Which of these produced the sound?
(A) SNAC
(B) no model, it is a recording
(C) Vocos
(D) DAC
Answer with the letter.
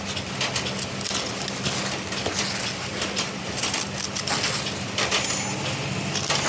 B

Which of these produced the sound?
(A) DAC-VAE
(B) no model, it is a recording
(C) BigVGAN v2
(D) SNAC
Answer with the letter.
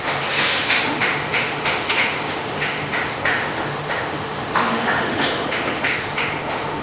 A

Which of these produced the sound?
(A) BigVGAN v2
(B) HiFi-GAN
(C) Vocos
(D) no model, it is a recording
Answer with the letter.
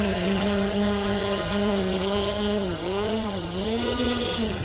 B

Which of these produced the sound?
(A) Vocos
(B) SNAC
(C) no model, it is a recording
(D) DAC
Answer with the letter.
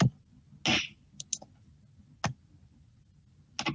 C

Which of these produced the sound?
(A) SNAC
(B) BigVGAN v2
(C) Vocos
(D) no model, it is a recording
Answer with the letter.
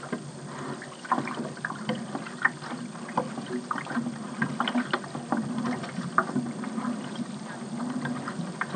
D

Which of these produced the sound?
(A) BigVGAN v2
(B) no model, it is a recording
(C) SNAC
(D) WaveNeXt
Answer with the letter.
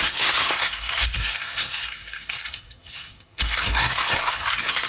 C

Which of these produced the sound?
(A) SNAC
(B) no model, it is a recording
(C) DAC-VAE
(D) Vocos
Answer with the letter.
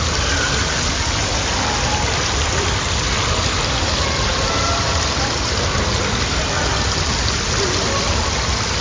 B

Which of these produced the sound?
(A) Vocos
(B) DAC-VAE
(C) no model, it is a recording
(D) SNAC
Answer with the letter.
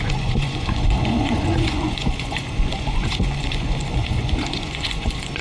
A